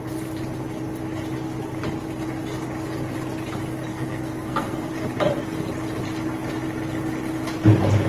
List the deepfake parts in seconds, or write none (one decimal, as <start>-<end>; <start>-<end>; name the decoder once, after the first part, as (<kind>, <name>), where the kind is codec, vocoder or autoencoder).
3.9-4.9 (codec, SNAC)